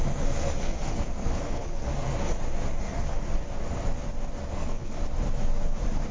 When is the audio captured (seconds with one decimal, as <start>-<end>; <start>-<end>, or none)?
2.1-2.8; 3.2-4.5; 5.0-6.1